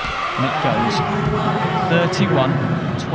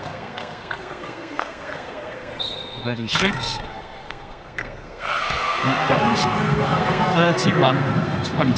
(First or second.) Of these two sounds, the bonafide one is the first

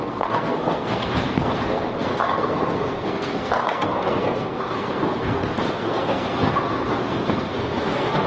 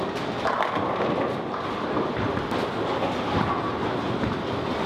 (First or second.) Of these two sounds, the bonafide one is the second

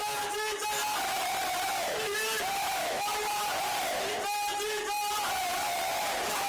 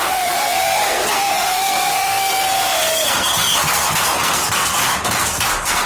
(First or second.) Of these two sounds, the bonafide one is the first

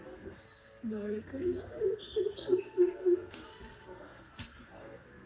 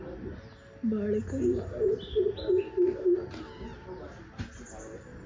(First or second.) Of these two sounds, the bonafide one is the second